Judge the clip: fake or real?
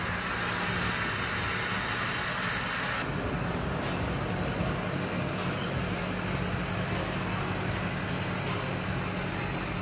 real